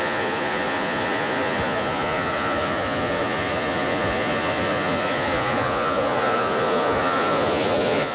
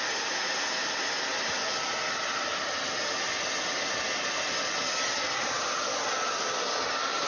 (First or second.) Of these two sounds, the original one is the second